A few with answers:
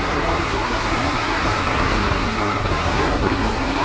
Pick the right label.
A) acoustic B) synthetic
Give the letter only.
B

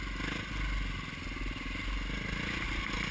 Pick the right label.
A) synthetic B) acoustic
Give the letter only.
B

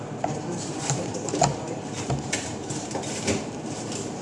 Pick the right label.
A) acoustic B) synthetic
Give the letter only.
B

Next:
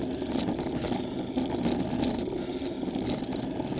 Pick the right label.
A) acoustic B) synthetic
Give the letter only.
A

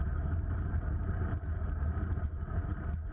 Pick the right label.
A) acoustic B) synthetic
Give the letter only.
B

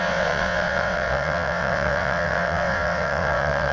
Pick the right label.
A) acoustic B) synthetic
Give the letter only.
B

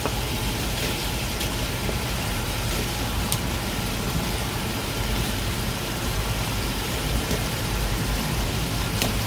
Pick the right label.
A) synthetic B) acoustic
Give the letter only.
A